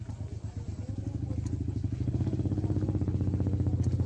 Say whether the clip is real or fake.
real